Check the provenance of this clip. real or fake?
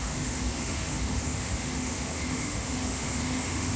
fake